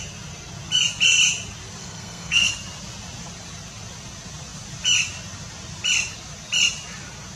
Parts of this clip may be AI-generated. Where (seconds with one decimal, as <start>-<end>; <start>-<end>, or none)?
1.8-2.5